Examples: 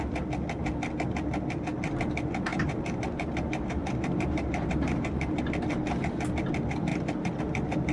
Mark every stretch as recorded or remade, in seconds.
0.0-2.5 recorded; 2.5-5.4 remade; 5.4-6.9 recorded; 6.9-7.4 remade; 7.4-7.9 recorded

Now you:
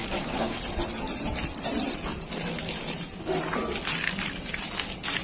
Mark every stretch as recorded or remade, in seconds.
0.0-0.6 remade; 0.6-5.2 recorded

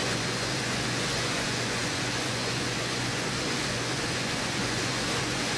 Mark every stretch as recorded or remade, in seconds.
0.0-5.6 remade